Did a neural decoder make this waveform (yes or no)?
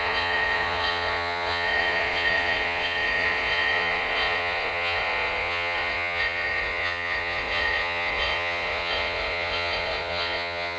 yes